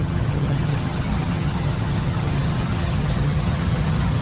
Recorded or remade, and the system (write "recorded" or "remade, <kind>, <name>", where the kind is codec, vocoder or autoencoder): remade, vocoder, HiFi-GAN